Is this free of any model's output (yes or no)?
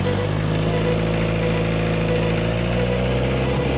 yes